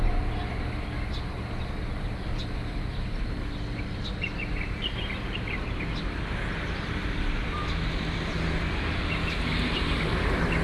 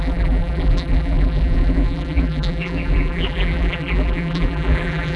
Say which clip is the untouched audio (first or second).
first